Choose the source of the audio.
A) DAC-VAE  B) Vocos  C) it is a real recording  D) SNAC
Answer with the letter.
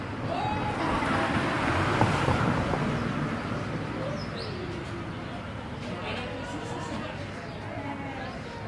C